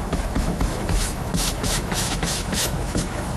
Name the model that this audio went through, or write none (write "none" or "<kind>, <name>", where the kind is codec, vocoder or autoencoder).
autoencoder, DAC-VAE